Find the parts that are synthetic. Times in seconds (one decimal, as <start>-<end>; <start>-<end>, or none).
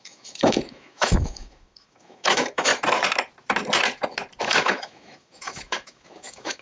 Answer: 0.0-2.7; 4.4-6.6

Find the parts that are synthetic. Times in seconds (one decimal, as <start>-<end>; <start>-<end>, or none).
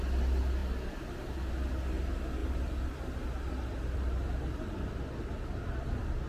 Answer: 2.4-3.8